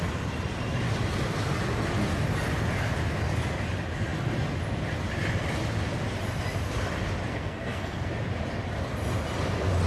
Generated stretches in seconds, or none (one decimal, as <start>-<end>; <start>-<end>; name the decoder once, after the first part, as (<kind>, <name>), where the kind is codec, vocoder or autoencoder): 7.3-8.1 (codec, SNAC)